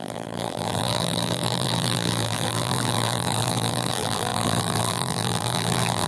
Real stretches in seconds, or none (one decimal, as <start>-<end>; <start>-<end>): none